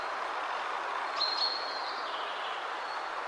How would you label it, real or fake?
real